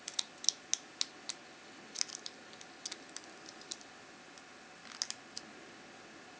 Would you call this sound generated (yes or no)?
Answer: no